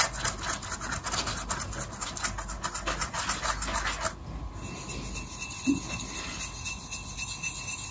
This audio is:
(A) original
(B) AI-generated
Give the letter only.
A